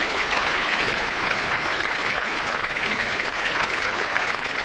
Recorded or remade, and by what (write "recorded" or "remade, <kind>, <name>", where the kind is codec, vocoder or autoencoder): remade, codec, HILCodec